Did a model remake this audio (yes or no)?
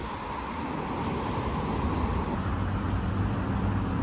no